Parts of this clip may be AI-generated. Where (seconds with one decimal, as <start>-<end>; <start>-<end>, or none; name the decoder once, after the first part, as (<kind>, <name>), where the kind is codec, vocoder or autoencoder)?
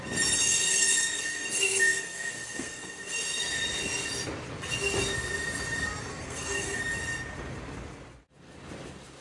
0.4-3.4 (codec, SNAC); 6.1-6.8